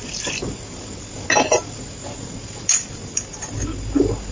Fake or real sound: real